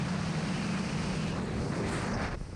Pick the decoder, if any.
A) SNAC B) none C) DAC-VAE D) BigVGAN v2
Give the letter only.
B